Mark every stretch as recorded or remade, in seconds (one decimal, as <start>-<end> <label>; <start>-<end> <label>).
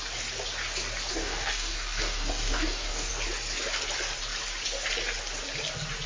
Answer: 0.0-1.1 recorded; 1.1-3.1 remade; 3.1-6.1 recorded